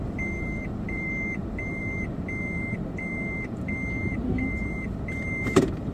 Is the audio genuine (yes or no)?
no